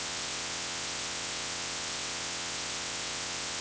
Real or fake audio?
fake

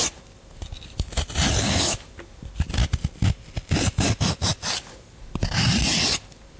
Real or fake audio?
real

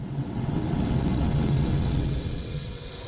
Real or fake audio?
fake